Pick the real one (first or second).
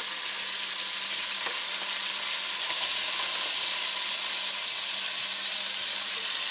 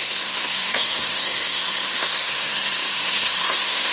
first